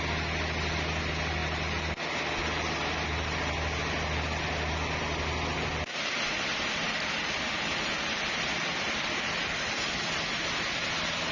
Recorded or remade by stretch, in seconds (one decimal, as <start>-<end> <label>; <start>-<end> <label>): 0.0-11.3 recorded